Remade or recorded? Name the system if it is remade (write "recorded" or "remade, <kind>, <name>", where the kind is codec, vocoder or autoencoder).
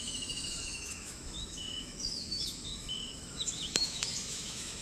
remade, autoencoder, DAC-VAE